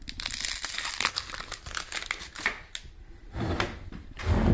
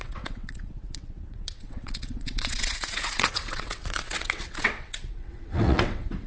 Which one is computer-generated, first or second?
second